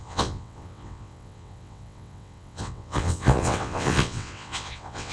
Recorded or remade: remade